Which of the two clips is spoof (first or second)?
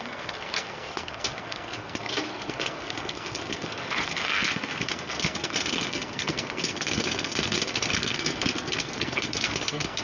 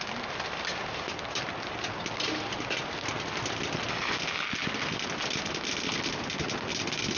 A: first